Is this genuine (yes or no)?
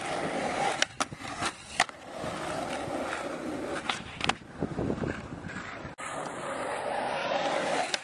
yes